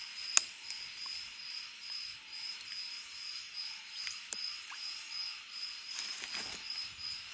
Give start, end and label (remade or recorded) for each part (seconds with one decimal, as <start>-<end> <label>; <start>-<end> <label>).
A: 0.0-1.8 recorded; 1.8-6.2 remade; 6.2-7.3 recorded